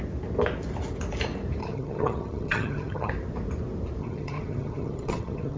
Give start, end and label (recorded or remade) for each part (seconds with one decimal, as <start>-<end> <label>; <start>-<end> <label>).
0.0-1.6 recorded; 1.6-3.1 remade; 3.1-4.0 recorded; 4.0-5.6 remade